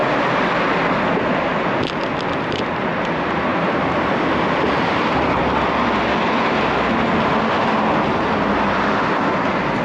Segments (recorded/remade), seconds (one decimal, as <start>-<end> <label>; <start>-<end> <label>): 0.0-9.8 recorded